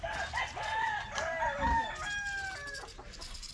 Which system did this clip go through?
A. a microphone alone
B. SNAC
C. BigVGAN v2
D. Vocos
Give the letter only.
A